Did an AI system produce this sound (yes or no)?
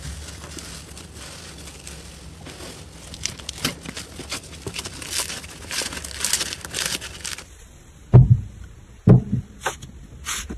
no